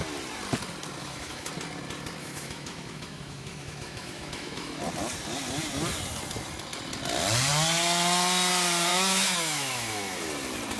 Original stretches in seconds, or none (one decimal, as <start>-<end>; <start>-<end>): 0.0-1.0; 1.5-2.2; 4.8-8.9; 10.2-10.8